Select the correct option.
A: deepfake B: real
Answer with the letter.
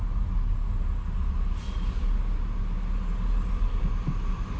B